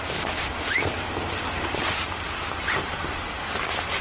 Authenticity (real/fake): real